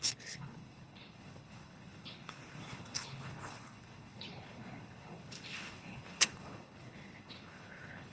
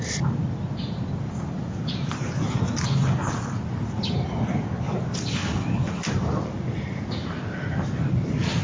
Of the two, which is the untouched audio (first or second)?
second